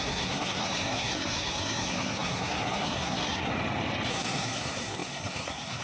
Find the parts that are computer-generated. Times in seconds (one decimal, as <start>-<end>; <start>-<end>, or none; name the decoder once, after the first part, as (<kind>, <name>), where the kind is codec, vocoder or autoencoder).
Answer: 0.0-3.5 (codec, SNAC); 4.1-5.8